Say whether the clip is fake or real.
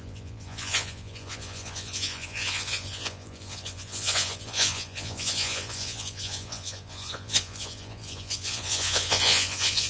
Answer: fake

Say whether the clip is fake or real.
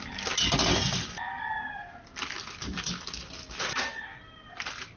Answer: real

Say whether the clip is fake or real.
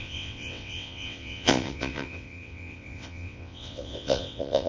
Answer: fake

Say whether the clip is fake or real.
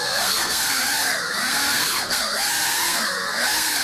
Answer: fake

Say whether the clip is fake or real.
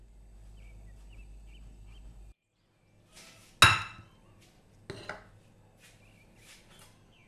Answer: real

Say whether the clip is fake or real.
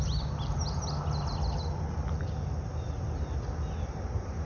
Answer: real